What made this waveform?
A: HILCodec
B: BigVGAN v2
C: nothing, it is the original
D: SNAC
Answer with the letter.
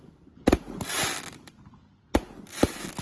C